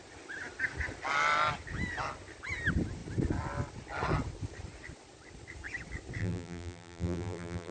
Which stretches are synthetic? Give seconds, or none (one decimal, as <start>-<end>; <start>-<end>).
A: 6.2-7.7